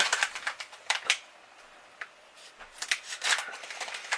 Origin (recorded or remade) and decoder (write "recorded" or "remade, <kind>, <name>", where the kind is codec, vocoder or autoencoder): remade, vocoder, BigVGAN v2